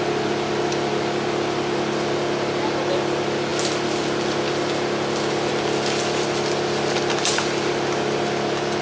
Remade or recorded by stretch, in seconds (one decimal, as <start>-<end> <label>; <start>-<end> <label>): 0.0-8.8 recorded